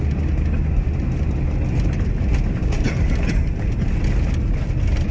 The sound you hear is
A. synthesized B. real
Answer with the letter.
B